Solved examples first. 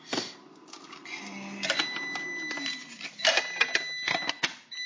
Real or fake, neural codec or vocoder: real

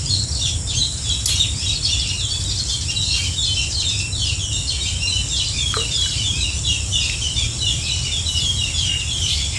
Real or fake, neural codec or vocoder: real